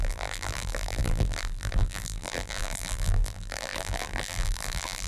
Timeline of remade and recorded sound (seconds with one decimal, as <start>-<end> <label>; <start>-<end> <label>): 0.0-5.1 remade